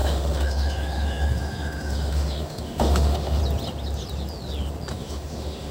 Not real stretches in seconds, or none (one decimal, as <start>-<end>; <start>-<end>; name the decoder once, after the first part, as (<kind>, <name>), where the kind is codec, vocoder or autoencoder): 0.0-3.4 (autoencoder, DAC-VAE); 4.9-5.7